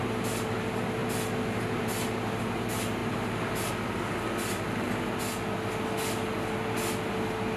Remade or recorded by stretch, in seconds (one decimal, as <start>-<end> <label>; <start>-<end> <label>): 0.0-7.6 recorded